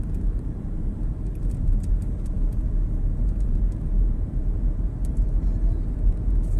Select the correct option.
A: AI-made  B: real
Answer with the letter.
A